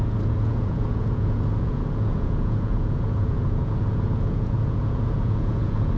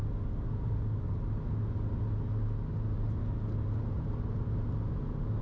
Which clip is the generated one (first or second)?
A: first